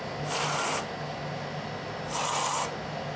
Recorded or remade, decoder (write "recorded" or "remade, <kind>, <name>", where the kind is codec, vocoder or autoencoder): recorded